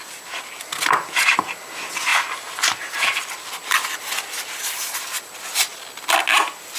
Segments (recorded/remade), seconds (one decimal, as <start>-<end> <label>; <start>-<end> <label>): 0.0-6.8 recorded